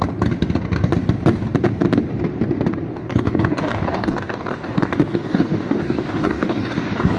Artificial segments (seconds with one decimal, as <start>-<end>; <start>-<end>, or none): 2.9-7.2